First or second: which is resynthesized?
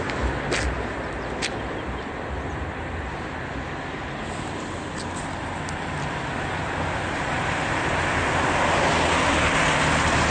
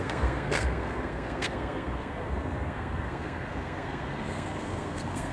second